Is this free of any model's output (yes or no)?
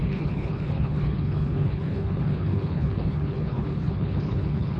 no